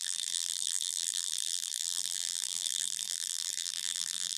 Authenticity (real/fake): fake